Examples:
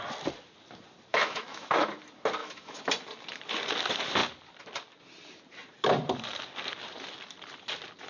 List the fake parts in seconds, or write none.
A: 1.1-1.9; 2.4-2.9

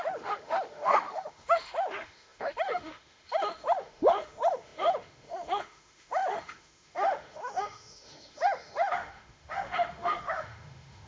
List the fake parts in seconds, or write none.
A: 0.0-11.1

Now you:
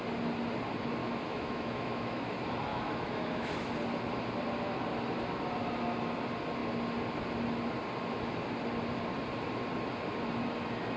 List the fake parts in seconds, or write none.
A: 1.0-2.3; 2.7-3.7

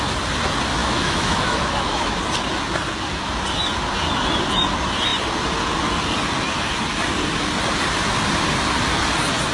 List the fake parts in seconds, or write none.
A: 0.8-2.1

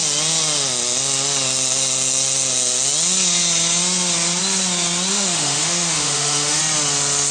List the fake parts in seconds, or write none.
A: 5.1-6.6

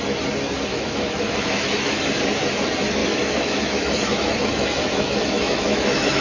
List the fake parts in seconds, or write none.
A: 0.7-2.0; 3.0-6.2